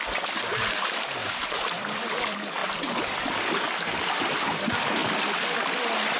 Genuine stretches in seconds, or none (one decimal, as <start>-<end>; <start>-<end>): 0.0-1.2; 2.2-6.2